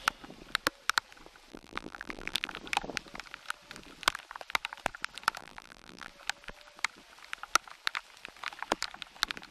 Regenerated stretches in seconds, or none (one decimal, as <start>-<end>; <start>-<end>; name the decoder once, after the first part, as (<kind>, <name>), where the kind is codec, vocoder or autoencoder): 1.5-2.5 (vocoder, BigVGAN v2); 5.4-6.1